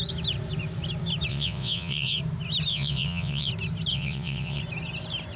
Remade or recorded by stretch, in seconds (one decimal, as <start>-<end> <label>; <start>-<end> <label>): 0.0-1.3 recorded; 1.3-2.2 remade; 2.2-2.7 recorded; 2.7-3.5 remade; 3.5-3.9 recorded; 3.9-4.6 remade; 4.6-5.4 recorded